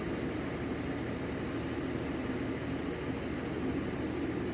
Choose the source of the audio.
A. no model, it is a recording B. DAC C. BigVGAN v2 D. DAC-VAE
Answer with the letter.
A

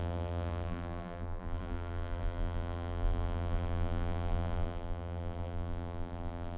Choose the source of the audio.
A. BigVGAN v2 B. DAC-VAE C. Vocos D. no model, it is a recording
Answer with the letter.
A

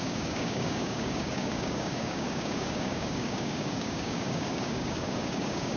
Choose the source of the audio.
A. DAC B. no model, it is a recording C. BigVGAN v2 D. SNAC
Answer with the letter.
A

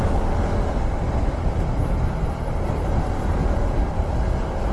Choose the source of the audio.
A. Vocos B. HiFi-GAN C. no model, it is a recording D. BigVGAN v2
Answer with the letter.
C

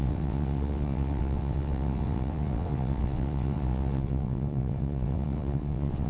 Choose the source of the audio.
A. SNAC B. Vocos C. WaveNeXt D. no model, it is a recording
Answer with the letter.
C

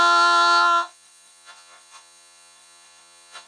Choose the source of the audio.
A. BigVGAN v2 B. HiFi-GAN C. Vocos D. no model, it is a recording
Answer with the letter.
C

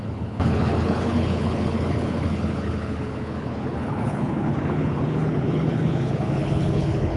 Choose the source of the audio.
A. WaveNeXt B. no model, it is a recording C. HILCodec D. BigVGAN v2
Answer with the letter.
C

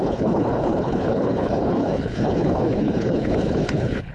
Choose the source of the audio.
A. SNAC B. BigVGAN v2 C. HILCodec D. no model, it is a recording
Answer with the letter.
C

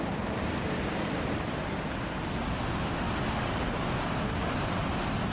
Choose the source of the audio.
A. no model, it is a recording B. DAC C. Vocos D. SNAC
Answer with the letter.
A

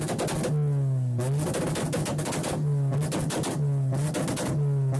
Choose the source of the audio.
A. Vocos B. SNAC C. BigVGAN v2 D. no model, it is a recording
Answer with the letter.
D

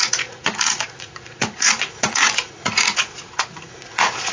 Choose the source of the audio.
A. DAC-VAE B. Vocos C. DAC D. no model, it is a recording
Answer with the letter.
B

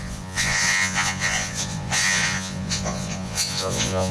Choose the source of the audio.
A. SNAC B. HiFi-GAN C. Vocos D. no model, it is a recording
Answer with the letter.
C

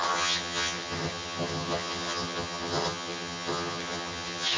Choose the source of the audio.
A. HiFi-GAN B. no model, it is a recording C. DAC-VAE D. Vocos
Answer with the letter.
A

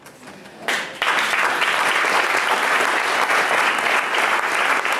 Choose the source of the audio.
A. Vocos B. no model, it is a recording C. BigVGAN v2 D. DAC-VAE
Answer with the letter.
B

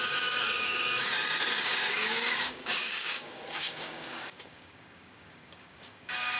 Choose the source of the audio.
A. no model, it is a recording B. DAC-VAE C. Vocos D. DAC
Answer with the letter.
D